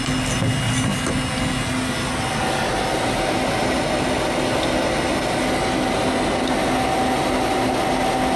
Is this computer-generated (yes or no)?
no